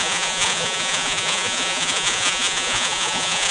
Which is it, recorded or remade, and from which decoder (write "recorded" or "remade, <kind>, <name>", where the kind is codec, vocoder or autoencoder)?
remade, vocoder, Vocos